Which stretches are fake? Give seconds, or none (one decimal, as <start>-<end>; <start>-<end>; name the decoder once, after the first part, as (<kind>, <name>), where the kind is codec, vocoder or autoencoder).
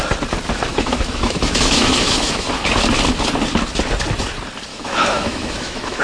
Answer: 0.7-2.5 (autoencoder, DAC-VAE); 4.7-6.0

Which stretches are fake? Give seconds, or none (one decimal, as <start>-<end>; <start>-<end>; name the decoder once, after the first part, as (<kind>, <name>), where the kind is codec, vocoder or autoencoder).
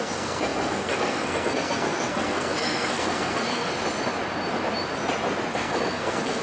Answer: 0.0-3.7 (codec, SNAC); 5.5-6.4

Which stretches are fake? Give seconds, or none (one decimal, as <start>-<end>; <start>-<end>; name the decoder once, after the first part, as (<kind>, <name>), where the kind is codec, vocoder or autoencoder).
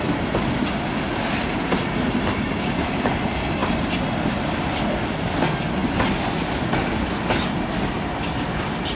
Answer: none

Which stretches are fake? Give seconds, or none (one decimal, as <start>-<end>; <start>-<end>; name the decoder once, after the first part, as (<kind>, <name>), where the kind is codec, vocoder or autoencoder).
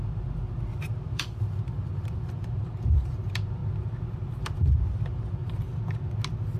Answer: 0.0-3.6 (vocoder, BigVGAN v2); 4.4-5.7